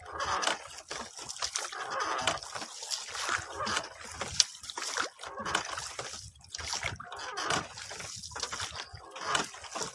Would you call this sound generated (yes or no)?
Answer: no